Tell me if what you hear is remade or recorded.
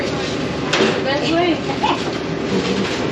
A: recorded